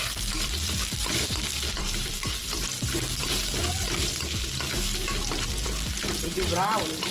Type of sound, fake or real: fake